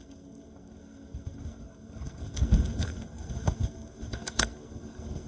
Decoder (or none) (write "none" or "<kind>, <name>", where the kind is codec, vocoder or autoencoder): codec, SNAC